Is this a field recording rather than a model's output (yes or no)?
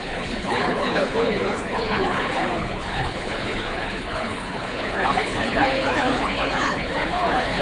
no